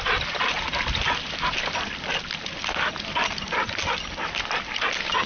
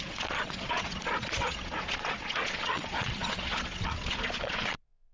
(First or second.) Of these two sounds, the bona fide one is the first